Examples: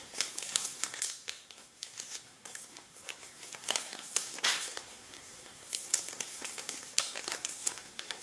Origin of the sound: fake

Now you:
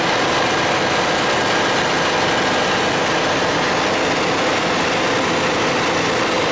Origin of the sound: real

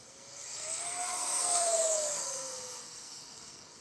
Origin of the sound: fake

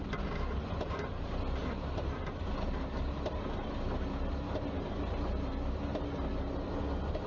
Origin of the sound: real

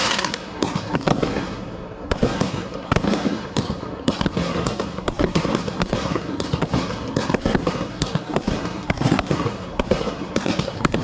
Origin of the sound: fake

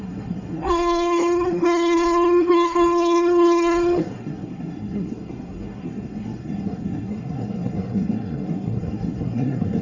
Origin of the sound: fake